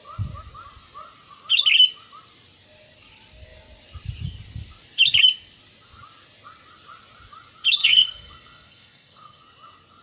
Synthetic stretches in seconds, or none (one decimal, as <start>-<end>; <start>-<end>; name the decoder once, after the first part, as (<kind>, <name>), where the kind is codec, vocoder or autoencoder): 7.8-9.4 (codec, SNAC)